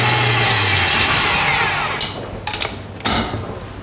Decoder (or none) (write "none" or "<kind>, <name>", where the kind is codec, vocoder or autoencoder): none